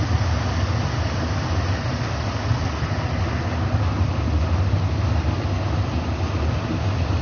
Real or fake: real